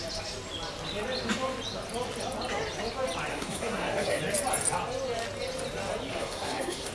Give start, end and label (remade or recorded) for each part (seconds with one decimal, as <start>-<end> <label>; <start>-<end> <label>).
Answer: 0.0-3.3 recorded; 3.3-4.2 remade; 4.2-6.1 recorded; 6.1-6.9 remade